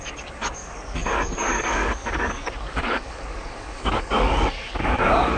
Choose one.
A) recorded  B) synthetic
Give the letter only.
B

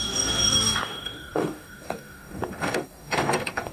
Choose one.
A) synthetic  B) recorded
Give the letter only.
A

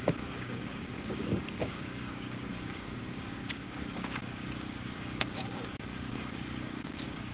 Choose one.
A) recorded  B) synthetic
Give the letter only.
B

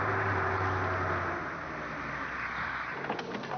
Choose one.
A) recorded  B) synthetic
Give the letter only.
A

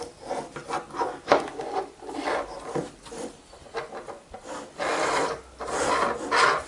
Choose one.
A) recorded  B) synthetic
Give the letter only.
A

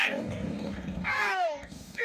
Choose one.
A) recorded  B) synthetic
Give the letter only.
B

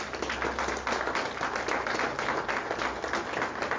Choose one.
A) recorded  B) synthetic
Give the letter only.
A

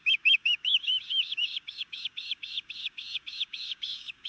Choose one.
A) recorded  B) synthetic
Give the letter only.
B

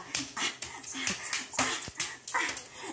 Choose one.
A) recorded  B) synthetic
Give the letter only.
A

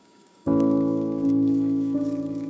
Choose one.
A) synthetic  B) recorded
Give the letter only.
A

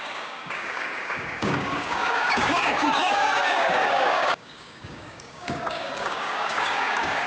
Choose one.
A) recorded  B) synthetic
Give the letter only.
B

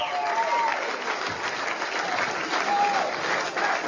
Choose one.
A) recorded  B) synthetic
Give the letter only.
A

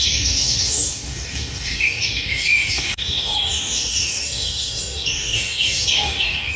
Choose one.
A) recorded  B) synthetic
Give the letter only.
B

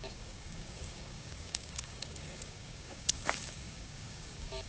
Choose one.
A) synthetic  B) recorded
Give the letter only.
A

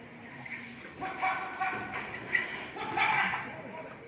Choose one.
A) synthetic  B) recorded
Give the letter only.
B